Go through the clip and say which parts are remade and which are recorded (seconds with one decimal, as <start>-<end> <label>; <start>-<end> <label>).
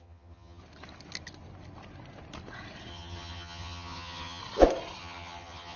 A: 0.0-0.6 remade; 0.6-2.9 recorded; 2.9-4.4 remade; 4.4-5.0 recorded; 5.0-5.8 remade